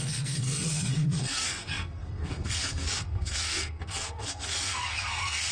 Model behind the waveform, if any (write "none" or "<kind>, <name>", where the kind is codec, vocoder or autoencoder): codec, SNAC